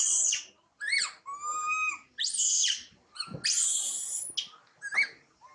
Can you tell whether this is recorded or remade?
recorded